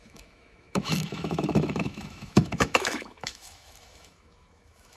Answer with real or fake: fake